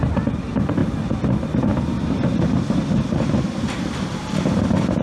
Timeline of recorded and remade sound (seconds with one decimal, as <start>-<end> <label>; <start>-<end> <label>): 0.0-0.8 remade; 0.8-1.8 recorded; 1.8-5.0 remade

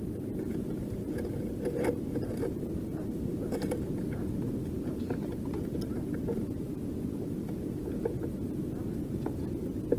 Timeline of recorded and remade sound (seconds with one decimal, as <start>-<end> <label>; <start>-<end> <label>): 0.0-2.9 recorded; 2.9-3.9 remade; 3.9-5.7 recorded; 5.7-8.1 remade; 8.1-10.0 recorded